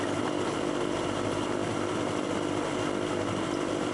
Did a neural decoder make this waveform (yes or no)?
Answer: no